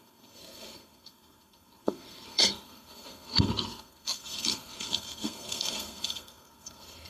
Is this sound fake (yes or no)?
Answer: yes